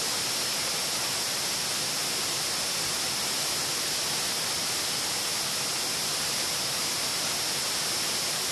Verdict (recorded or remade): recorded